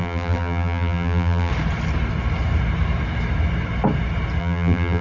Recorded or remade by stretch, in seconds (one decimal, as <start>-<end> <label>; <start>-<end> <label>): 0.0-1.5 remade; 1.5-4.4 recorded; 4.4-5.0 remade